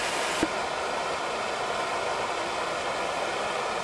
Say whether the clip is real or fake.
real